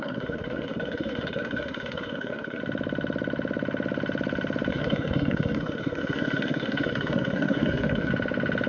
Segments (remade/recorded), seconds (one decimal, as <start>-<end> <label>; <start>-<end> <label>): 0.0-2.6 remade; 2.6-4.7 recorded; 4.7-8.1 remade; 8.1-8.7 recorded